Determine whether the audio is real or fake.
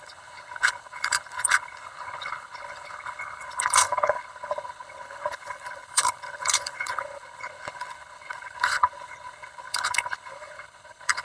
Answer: fake